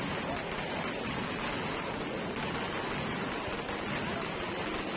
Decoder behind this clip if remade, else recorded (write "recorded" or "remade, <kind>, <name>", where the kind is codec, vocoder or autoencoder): recorded